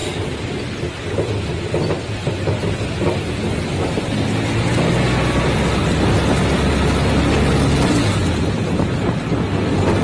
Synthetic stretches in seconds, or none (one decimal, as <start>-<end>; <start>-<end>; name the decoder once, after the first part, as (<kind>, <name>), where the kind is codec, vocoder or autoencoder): none